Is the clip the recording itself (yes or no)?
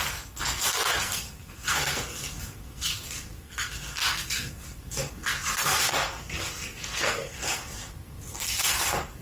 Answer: no